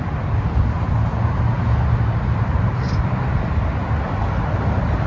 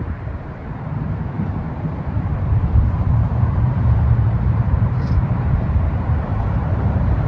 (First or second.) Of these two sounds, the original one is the first